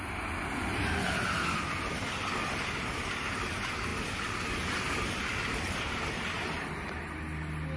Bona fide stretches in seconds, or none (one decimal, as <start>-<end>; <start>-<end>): 0.0-7.8